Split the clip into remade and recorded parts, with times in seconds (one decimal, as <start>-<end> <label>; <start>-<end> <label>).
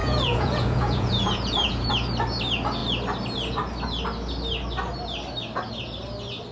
0.0-1.9 remade; 1.9-6.5 recorded